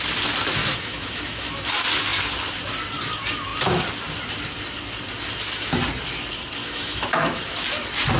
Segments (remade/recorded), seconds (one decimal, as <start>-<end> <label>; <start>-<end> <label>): 0.0-0.6 recorded; 0.6-1.7 remade; 1.7-6.6 recorded; 6.6-7.4 remade; 7.4-8.2 recorded